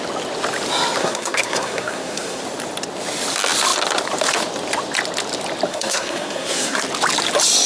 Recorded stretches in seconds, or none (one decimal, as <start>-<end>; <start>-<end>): 0.0-1.0; 2.4-5.7; 6.8-7.7